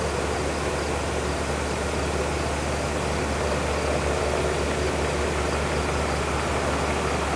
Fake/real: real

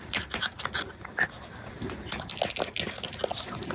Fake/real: real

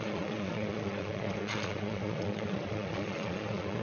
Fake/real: fake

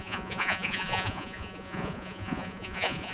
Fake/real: fake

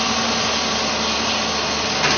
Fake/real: real